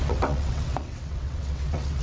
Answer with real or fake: fake